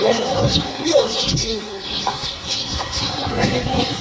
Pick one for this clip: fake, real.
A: fake